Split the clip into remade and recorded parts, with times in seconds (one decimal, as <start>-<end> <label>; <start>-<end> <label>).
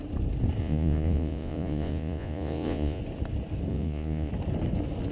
0.0-0.6 recorded; 0.6-3.0 remade; 3.0-3.7 recorded; 3.7-4.3 remade; 4.3-5.1 recorded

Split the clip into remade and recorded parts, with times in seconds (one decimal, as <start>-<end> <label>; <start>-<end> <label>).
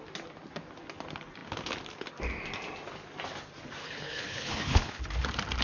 0.0-3.8 recorded; 3.8-5.0 remade; 5.0-5.6 recorded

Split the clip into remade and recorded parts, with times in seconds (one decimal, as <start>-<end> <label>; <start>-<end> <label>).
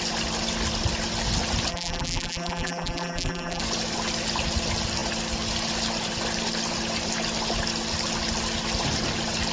0.0-1.7 recorded; 1.7-3.6 remade; 3.6-9.5 recorded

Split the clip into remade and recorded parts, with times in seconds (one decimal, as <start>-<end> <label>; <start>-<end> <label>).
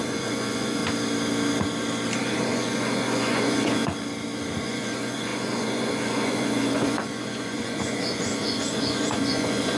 0.0-0.8 remade; 0.8-2.2 recorded; 2.2-3.8 remade; 3.8-4.6 recorded; 4.6-9.8 remade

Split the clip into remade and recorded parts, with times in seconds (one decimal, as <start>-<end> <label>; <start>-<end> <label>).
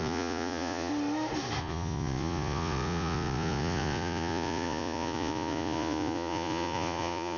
0.0-0.9 remade; 0.9-1.6 recorded; 1.6-7.4 remade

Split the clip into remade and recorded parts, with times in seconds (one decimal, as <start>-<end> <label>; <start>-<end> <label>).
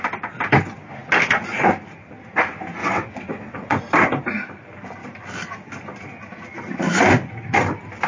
0.0-2.8 recorded; 2.8-3.8 remade; 3.8-8.1 recorded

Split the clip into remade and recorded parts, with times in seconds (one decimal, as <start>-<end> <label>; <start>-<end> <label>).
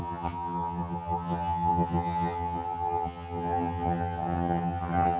0.0-5.2 remade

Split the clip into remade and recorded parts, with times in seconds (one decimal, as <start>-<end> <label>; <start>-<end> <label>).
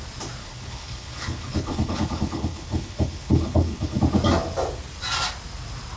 0.0-0.4 recorded; 0.4-4.0 remade; 4.0-6.0 recorded